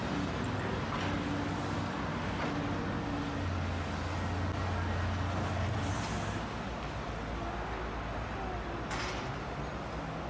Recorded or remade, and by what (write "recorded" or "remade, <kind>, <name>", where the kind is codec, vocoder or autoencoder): recorded